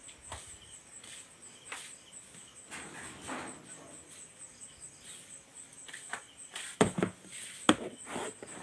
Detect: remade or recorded recorded